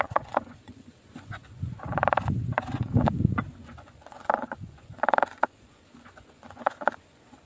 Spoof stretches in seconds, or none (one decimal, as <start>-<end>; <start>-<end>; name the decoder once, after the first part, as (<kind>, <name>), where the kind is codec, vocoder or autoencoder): 0.0-7.5 (vocoder, Vocos)

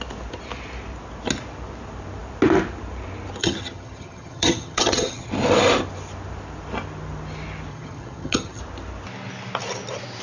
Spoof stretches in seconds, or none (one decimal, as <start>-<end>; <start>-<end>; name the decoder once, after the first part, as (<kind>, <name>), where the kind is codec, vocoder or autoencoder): 3.4-5.3 (vocoder, HiFi-GAN); 7.7-8.6

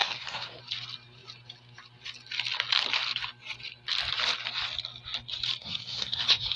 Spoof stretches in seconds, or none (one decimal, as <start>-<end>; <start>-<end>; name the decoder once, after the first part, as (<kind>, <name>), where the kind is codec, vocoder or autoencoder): 0.0-0.6 (codec, SNAC); 5.6-6.6

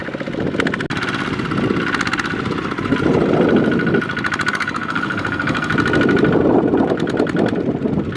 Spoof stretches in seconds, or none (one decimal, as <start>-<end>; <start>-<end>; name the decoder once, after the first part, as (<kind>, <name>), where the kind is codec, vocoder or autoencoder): 4.5-5.7 (codec, SNAC)

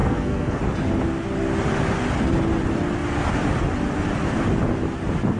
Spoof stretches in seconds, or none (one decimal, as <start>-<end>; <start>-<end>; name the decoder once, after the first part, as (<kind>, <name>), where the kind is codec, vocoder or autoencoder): 0.0-0.6 (codec, SNAC)

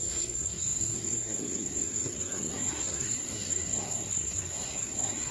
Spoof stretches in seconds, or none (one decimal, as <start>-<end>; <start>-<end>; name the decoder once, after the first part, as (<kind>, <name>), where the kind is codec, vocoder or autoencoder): 0.0-5.3 (codec, SNAC)

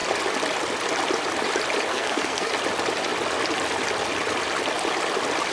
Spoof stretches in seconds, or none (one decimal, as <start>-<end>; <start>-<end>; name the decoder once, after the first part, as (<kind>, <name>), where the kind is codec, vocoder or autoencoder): 1.9-2.5 (codec, SNAC)

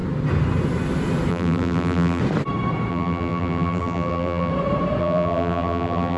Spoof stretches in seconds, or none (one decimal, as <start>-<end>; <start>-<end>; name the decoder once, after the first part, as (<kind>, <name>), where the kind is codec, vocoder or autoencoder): 1.3-2.2 (vocoder, BigVGAN v2); 2.9-4.5; 5.0-6.2